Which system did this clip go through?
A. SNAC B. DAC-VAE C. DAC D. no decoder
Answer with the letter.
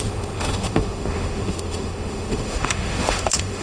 B